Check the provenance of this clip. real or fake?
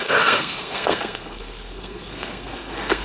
fake